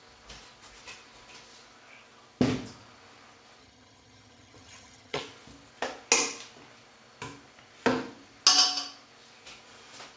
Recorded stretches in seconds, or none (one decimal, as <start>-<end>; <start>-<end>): 0.0-3.6; 5.2-10.2